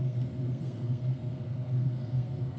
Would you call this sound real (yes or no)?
no